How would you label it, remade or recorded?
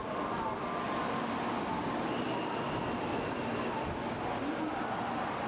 recorded